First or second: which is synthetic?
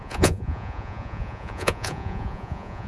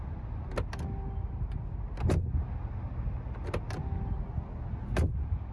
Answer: first